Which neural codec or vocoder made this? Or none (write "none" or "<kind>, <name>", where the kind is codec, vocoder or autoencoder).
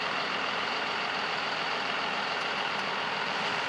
vocoder, BigVGAN v2